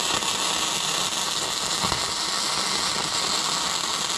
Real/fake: real